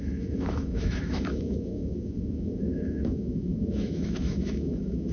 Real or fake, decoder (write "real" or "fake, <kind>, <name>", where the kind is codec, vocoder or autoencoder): fake, autoencoder, DAC-VAE